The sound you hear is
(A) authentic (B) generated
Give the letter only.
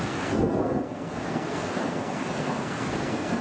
B